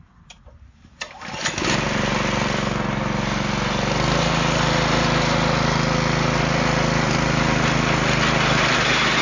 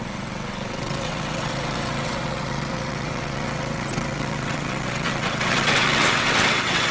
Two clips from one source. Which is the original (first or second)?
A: first